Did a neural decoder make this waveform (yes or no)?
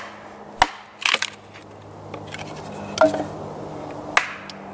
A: no